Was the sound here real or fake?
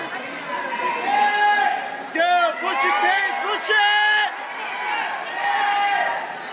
real